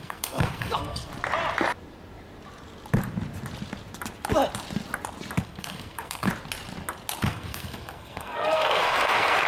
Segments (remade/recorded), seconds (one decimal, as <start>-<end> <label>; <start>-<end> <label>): 0.0-1.1 remade; 1.1-5.4 recorded; 5.4-6.3 remade; 6.3-7.2 recorded; 7.2-9.5 remade

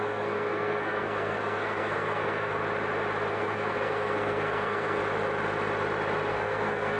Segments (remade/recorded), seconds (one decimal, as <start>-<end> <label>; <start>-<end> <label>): 0.0-2.6 remade; 2.6-3.3 recorded; 3.3-5.0 remade; 5.0-6.3 recorded; 6.3-7.0 remade

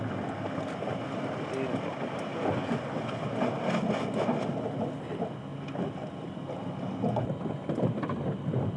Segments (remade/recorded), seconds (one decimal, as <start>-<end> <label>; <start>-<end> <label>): 0.0-8.8 recorded